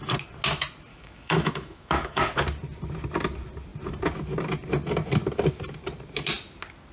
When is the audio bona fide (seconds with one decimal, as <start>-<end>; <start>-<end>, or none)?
0.0-0.9; 2.2-6.9